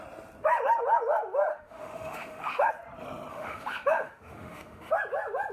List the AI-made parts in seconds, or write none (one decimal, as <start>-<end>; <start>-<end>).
1.5-2.7; 3.3-4.9